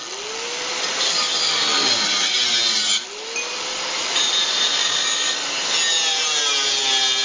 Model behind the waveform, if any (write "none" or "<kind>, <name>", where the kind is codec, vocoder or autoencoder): none